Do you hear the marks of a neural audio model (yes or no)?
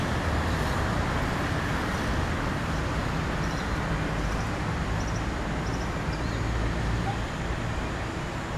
no